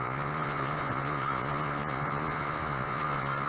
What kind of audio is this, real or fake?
fake